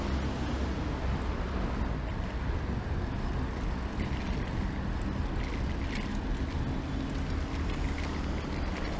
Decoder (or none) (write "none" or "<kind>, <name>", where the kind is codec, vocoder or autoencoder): none